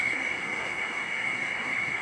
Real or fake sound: fake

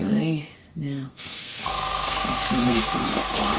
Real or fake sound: fake